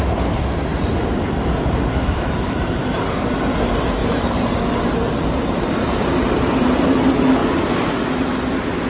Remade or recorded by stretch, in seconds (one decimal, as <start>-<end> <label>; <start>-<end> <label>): 0.0-0.7 recorded; 0.7-3.1 remade; 3.1-4.0 recorded; 4.0-6.9 remade; 6.9-8.9 recorded